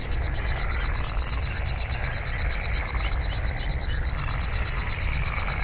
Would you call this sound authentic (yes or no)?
yes